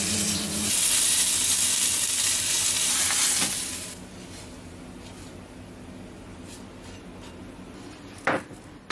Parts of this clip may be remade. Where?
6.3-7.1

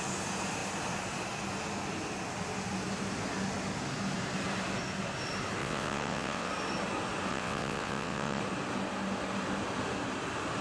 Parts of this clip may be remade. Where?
5.6-6.5; 7.3-8.4

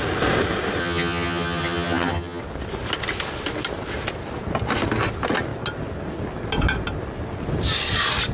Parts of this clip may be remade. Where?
0.8-2.4

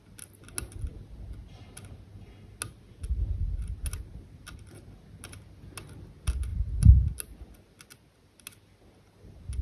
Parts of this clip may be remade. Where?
none